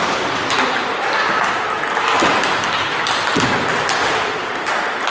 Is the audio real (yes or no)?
yes